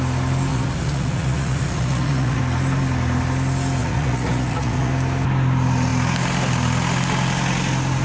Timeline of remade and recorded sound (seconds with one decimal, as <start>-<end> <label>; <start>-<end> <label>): 0.0-0.5 recorded; 0.5-2.4 remade; 2.4-3.8 recorded; 3.8-4.9 remade; 4.9-8.0 recorded